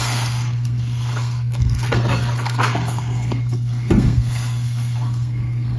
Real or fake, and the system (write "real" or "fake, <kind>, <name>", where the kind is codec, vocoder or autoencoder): fake, codec, SNAC